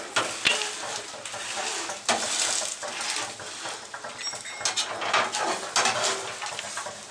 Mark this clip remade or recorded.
recorded